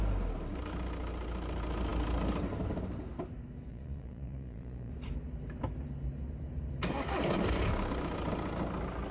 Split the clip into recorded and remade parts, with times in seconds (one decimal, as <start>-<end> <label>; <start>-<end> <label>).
0.0-3.7 recorded; 3.7-4.9 remade; 4.9-9.1 recorded